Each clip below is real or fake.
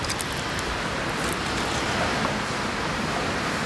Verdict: real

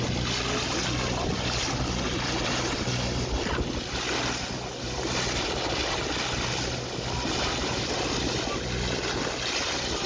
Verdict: real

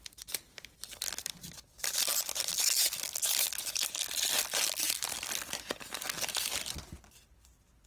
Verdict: real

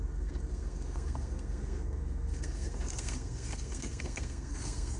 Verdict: fake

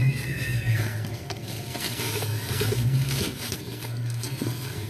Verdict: fake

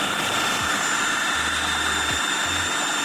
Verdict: real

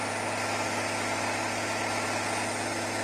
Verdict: real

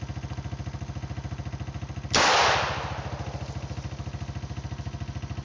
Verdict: real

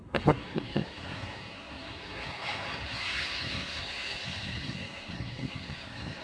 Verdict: fake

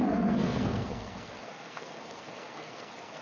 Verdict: fake